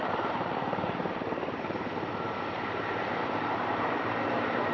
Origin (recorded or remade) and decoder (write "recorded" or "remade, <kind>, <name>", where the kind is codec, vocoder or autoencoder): remade, vocoder, BigVGAN v2